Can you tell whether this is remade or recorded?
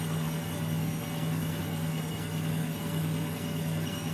remade